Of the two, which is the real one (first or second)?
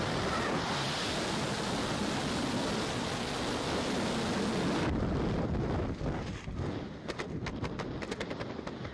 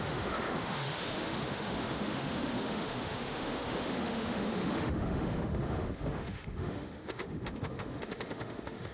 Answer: first